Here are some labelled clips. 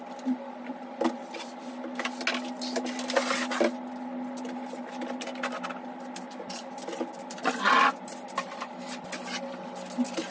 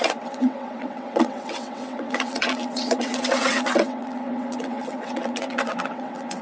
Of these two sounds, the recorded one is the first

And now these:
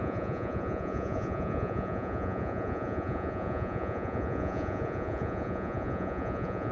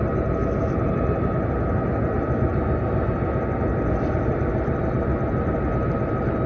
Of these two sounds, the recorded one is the second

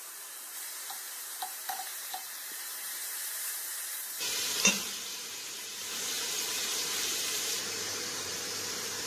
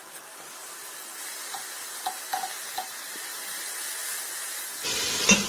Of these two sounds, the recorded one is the second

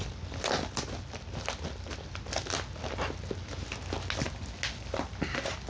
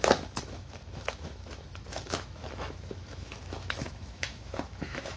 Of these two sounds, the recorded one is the first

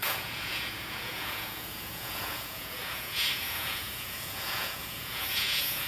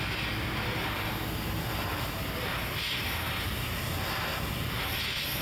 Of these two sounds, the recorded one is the second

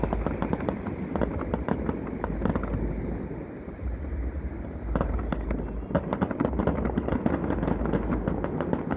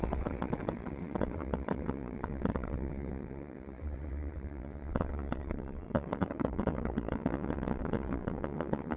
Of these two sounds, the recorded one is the first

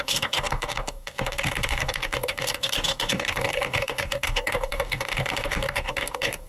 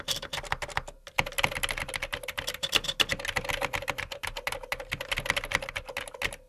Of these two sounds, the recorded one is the second